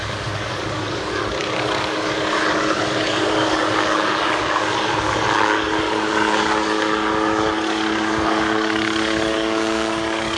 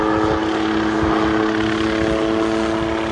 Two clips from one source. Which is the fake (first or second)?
first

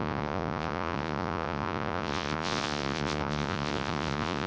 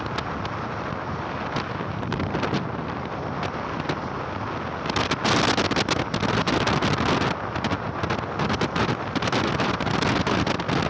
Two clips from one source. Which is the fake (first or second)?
first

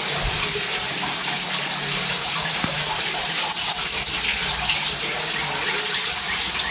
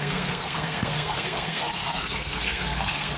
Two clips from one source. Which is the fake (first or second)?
second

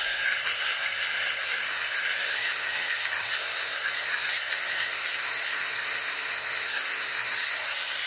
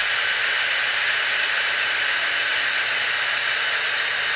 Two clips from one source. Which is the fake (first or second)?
first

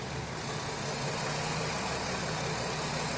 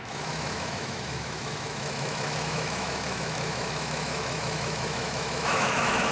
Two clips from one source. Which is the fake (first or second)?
second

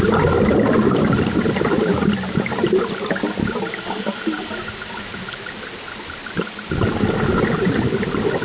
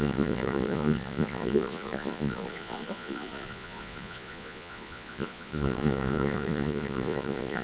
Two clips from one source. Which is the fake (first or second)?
second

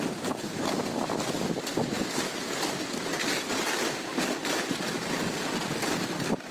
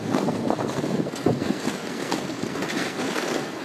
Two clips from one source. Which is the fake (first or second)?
second